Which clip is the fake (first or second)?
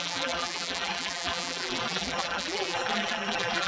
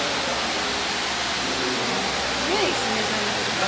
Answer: first